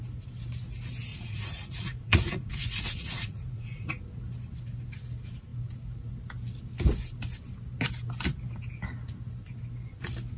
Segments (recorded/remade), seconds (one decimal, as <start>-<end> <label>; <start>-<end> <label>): 0.0-1.1 recorded; 1.1-3.9 remade; 3.9-10.4 recorded

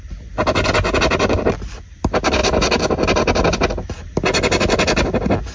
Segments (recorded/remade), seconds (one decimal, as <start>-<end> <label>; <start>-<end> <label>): 0.0-5.5 recorded